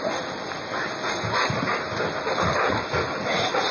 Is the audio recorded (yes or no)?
yes